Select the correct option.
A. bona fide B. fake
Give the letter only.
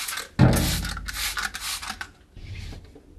A